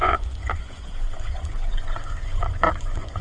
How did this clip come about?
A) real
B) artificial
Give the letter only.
B